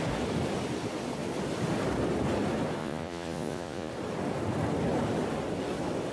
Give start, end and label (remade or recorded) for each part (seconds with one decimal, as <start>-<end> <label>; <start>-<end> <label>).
0.0-2.8 recorded; 2.8-3.9 remade; 3.9-6.1 recorded